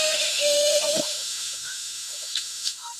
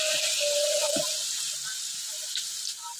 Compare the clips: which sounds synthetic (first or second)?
first